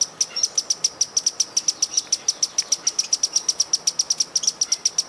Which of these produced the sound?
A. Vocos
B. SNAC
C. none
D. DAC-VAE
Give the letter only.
C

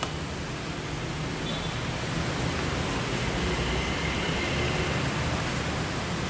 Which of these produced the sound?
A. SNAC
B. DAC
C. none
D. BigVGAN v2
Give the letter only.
C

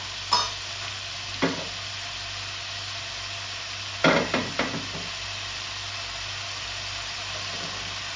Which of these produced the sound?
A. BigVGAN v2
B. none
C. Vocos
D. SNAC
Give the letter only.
B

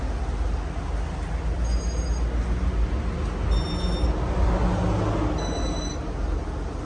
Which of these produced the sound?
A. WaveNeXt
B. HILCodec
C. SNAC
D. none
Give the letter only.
D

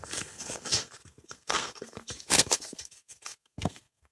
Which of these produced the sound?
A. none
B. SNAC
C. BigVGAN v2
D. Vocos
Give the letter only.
B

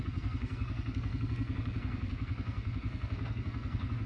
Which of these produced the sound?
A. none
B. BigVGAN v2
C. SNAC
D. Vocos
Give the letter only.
C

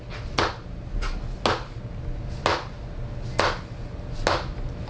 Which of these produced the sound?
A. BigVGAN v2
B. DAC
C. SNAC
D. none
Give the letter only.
D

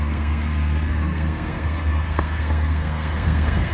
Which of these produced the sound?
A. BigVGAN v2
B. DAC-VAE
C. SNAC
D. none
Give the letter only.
C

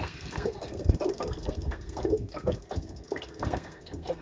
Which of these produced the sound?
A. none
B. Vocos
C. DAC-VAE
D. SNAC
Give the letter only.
D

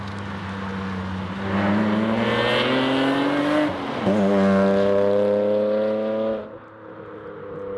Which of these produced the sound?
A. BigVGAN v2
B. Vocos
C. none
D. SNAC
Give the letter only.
C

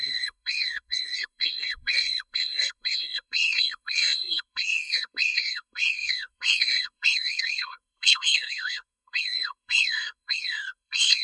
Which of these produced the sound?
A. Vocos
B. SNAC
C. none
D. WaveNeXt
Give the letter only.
B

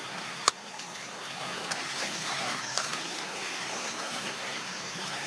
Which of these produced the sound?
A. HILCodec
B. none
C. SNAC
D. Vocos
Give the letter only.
C